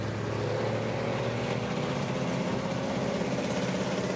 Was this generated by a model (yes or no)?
no